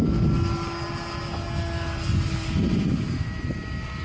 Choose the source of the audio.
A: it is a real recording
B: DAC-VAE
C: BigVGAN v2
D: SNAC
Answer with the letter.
A